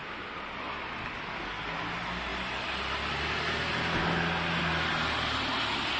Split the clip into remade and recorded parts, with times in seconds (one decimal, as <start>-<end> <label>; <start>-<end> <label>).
0.0-6.0 recorded